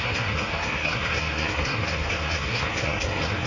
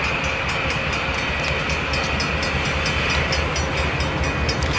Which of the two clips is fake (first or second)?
first